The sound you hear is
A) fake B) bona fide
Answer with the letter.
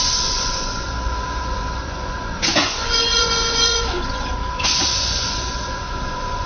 A